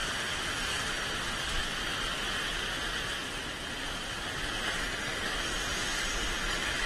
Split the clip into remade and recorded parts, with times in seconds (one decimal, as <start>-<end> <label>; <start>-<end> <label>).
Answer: 0.0-1.6 remade; 1.6-5.7 recorded; 5.7-6.9 remade